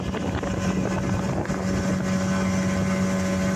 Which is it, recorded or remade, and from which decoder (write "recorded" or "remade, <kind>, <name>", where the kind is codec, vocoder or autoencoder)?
recorded